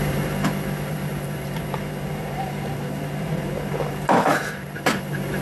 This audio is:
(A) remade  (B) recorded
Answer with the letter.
A